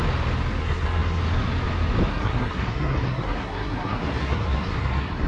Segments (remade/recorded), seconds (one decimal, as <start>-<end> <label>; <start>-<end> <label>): 0.0-0.6 recorded; 0.6-1.2 remade; 1.2-2.1 recorded; 2.1-5.3 remade